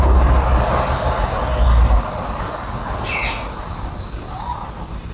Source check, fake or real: real